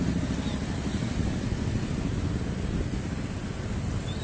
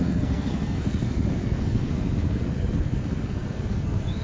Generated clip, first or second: second